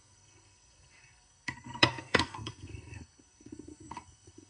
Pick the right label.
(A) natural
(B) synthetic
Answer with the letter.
B